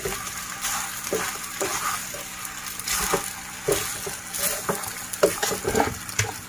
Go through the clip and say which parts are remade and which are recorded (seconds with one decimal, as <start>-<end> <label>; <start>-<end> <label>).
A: 0.0-1.7 remade; 1.7-5.3 recorded; 5.3-6.5 remade